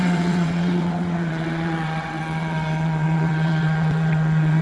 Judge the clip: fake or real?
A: fake